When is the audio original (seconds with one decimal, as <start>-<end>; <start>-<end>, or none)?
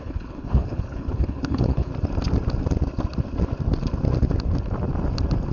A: 1.9-5.5